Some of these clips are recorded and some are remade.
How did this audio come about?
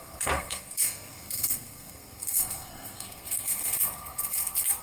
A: remade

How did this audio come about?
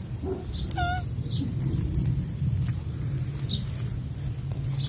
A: recorded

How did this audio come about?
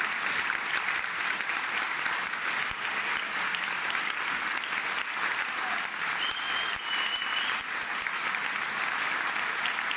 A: recorded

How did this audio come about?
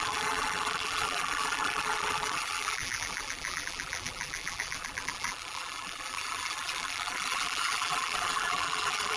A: remade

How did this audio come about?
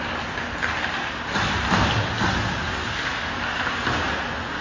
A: recorded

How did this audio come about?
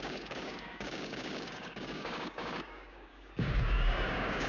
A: remade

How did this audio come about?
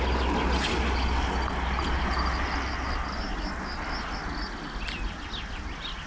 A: recorded